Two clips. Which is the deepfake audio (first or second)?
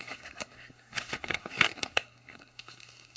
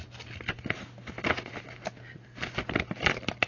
first